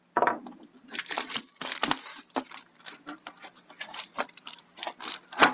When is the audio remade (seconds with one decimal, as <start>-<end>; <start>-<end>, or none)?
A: 0.4-1.3; 2.1-4.6

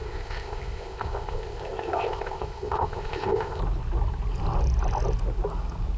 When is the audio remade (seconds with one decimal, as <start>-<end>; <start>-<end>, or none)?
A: 0.0-3.6